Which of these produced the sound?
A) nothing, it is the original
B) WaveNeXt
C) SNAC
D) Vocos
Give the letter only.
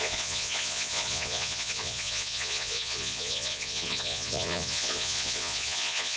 D